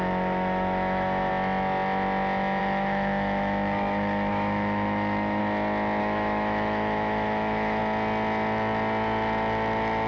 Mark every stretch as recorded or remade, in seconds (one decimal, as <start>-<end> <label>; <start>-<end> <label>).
0.0-1.3 remade; 1.3-2.6 recorded; 2.6-5.4 remade; 5.4-6.0 recorded; 6.0-7.8 remade; 7.8-10.1 recorded